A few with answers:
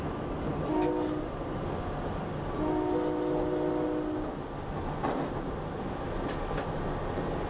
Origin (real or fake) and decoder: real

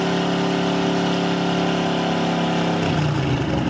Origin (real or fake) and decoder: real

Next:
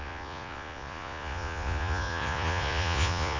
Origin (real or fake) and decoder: fake, vocoder, Vocos